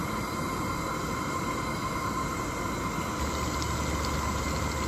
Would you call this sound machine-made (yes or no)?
no